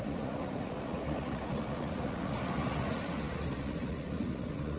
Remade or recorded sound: remade